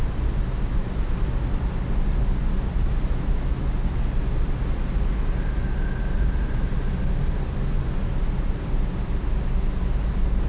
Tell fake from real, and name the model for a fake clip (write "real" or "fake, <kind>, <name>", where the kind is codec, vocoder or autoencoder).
real